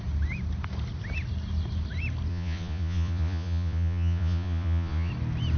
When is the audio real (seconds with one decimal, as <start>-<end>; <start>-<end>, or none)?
0.0-2.3; 5.1-5.6